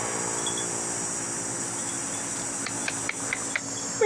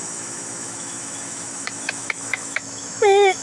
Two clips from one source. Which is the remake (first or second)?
second